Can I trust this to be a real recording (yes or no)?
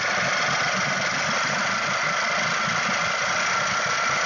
yes